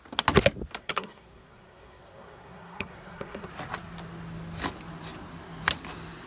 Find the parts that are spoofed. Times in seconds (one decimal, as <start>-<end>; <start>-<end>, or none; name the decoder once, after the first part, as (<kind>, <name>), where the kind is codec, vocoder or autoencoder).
0.8-3.5 (codec, SNAC)

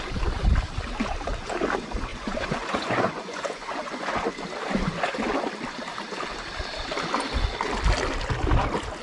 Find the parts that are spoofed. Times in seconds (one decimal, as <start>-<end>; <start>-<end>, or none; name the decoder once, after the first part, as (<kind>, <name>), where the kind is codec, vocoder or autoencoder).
2.1-4.3 (vocoder, Vocos)

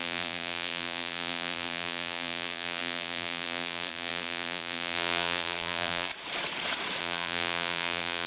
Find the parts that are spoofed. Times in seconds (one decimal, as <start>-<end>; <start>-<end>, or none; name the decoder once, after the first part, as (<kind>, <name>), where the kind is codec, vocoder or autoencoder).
0.0-6.1 (vocoder, BigVGAN v2); 7.0-8.3

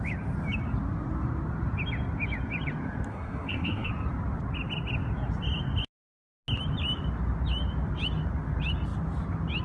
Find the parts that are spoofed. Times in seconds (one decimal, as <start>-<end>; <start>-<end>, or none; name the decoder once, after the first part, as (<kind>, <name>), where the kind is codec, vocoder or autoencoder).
3.1-3.9 (codec, SNAC)

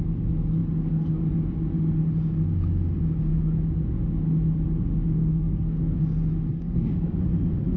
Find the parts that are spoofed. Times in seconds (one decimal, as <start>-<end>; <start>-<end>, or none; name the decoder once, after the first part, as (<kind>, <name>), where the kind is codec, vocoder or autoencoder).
5.2-6.0 (codec, SNAC); 6.5-7.1

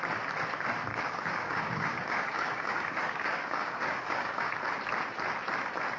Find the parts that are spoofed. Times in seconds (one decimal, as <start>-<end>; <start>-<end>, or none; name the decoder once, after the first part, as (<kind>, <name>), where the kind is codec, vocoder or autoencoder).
0.9-4.5 (codec, DAC)